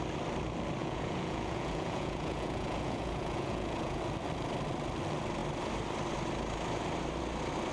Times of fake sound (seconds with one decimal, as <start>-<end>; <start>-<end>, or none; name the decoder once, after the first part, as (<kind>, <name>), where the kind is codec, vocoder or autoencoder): 0.8-4.0 (vocoder, Vocos)

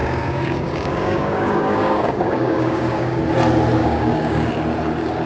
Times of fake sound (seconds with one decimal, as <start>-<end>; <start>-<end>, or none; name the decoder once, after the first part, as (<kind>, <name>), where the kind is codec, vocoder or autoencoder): 0.0-3.2 (codec, DAC); 3.8-4.5

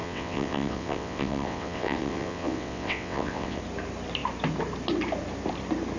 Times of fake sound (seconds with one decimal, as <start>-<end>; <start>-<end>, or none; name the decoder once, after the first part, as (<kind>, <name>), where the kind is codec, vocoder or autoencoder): 0.0-3.6 (vocoder, WaveNeXt)

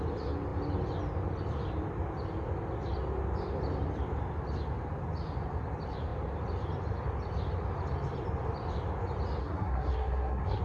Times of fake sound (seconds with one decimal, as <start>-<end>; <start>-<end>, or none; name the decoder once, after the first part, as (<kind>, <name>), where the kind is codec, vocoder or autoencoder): 9.4-10.6 (codec, SNAC)

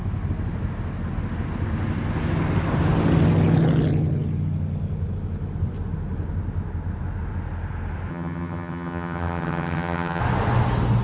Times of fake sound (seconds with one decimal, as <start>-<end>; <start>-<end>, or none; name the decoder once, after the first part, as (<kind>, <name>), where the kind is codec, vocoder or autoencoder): 8.1-10.2 (vocoder, HiFi-GAN)

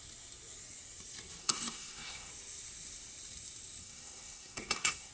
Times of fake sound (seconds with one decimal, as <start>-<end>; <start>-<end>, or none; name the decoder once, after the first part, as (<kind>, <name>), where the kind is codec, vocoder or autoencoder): 1.4-2.3 (codec, SNAC); 3.8-5.1

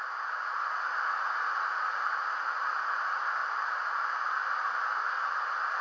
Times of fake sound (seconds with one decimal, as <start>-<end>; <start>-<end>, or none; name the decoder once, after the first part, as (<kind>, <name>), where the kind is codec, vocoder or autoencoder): 0.0-4.4 (vocoder, Vocos)

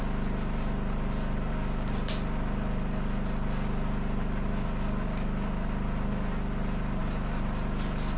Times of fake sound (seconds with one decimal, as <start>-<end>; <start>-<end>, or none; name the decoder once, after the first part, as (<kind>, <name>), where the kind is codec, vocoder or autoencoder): none